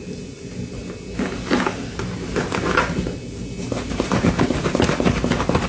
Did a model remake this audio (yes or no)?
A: no